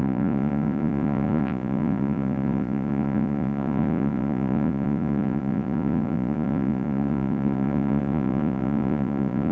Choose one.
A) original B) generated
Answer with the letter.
B